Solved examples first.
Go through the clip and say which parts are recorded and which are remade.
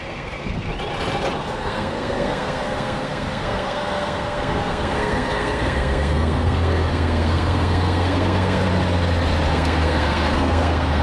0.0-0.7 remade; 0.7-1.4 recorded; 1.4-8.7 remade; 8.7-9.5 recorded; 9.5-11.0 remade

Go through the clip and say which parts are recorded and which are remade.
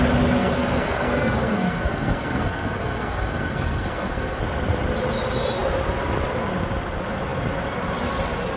0.0-0.4 recorded; 0.4-4.4 remade; 4.4-8.6 recorded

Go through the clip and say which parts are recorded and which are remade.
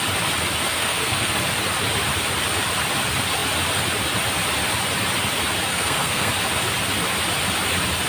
0.0-0.7 recorded; 0.7-1.3 remade; 1.3-5.7 recorded; 5.7-6.3 remade; 6.3-8.1 recorded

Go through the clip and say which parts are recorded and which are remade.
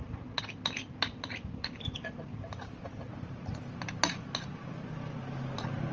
0.0-5.9 recorded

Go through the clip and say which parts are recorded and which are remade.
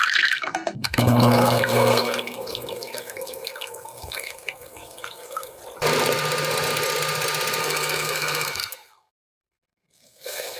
0.0-5.6 remade; 5.6-7.6 recorded; 7.6-10.6 remade